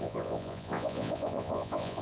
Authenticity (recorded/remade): remade